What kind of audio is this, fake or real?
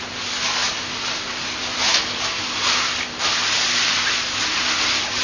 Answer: real